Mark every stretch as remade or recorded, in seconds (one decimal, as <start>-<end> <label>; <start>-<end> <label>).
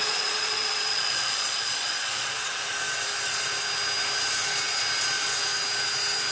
0.0-2.5 remade; 2.5-6.3 recorded